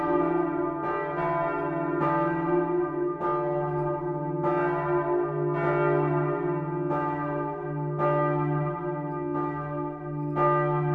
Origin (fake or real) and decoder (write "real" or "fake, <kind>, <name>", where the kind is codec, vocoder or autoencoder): real